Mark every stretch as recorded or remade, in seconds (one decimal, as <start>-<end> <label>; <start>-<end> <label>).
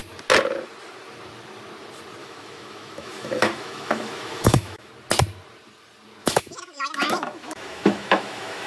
0.0-2.2 recorded; 2.2-4.9 remade; 4.9-6.2 recorded; 6.2-8.7 remade